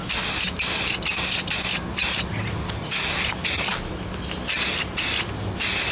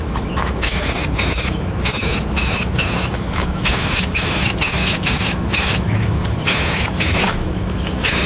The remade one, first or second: second